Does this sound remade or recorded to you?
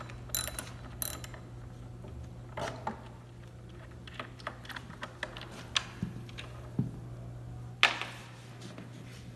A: recorded